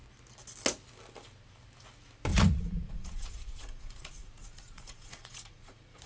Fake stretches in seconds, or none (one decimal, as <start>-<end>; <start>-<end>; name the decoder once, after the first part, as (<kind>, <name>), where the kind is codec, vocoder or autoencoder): 2.3-6.1 (vocoder, Vocos)